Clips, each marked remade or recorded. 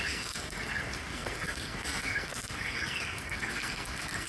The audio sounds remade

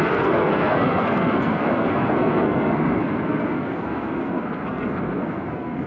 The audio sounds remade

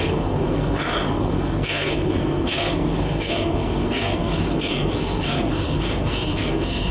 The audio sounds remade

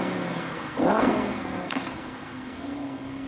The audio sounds remade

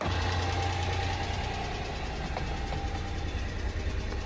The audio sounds recorded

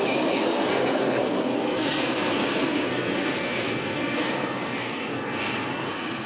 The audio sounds remade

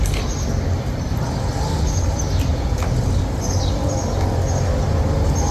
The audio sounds recorded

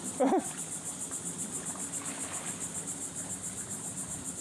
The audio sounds recorded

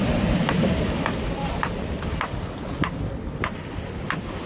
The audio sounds recorded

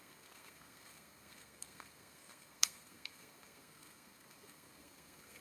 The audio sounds remade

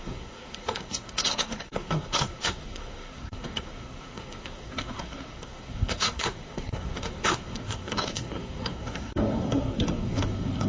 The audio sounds remade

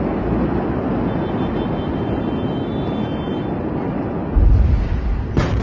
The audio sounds recorded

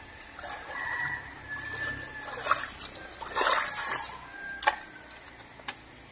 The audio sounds recorded